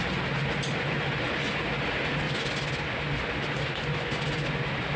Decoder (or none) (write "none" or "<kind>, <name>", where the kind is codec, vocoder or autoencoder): none